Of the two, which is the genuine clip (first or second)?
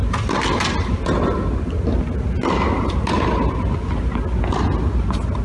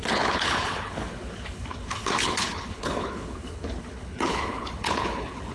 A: first